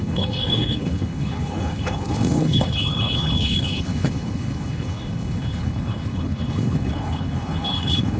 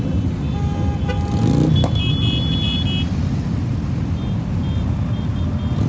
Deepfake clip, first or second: first